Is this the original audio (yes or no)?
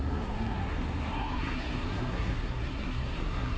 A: no